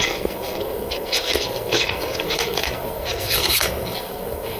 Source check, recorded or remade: remade